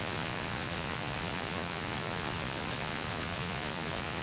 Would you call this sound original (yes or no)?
no